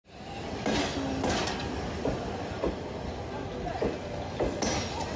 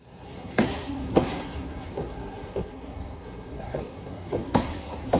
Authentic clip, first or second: first